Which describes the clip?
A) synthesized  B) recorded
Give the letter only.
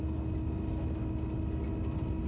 B